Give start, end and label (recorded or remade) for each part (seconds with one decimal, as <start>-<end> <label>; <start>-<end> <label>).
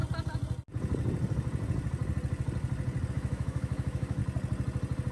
0.0-3.1 recorded; 3.1-4.2 remade; 4.2-5.1 recorded